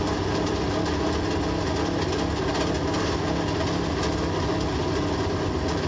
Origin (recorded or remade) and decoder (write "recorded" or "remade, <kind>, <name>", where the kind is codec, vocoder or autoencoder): recorded